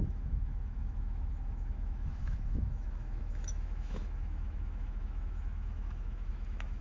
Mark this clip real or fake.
fake